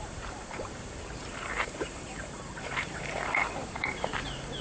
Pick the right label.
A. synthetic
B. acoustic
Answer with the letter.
A